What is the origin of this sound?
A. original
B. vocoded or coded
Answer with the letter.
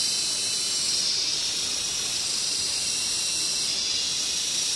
A